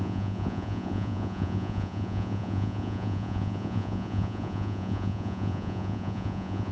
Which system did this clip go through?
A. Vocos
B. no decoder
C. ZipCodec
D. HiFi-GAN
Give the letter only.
A